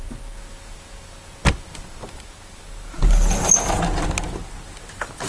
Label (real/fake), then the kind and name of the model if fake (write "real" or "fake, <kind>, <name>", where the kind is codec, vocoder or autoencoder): real